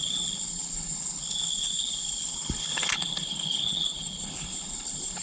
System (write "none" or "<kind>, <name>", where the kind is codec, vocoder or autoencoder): codec, HILCodec